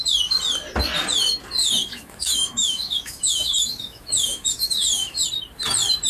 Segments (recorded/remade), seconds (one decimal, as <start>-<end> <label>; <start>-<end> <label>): 0.0-1.6 recorded; 1.6-5.2 remade; 5.2-6.1 recorded